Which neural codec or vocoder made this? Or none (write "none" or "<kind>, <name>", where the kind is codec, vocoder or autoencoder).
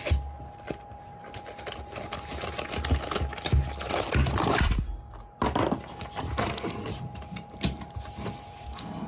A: none